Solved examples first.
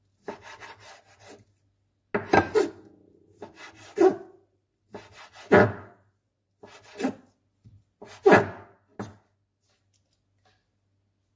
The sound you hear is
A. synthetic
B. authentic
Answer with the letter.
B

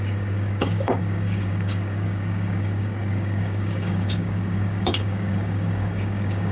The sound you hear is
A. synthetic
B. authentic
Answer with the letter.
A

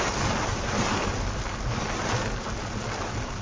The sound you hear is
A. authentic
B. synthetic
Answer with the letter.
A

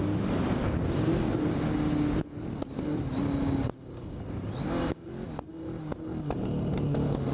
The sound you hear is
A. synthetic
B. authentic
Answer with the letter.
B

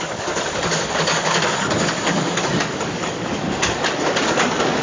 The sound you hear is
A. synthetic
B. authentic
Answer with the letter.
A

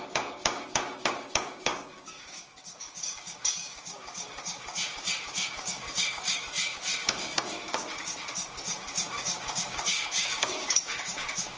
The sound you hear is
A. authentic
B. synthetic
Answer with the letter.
B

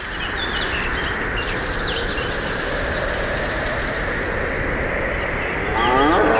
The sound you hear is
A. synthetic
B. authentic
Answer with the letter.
B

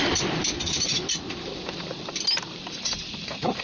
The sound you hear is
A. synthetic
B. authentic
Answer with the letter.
B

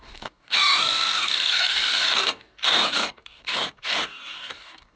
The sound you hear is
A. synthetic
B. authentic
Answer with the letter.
A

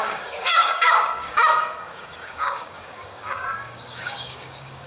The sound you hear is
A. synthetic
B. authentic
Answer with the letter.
A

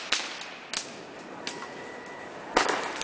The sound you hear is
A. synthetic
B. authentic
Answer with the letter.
B